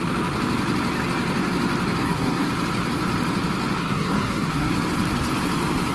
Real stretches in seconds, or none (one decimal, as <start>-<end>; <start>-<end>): 0.0-2.0; 2.5-3.8; 4.7-5.9